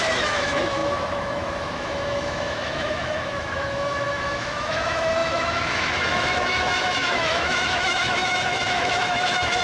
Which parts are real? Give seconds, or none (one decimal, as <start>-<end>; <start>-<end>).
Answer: none

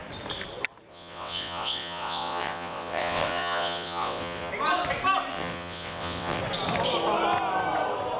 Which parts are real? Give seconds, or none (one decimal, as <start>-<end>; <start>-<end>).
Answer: 0.0-0.9; 4.5-5.3; 6.4-8.2

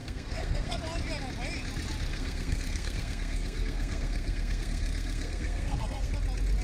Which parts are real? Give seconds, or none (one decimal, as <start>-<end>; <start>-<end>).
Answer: 0.8-2.1; 6.1-6.6

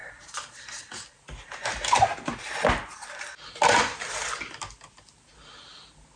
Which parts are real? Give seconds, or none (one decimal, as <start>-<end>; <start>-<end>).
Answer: 0.0-6.2

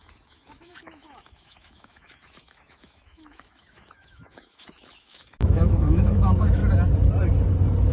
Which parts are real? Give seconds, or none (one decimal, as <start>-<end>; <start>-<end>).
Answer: 6.6-7.9